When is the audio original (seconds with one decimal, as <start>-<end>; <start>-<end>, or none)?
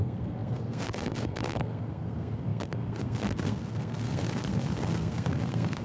none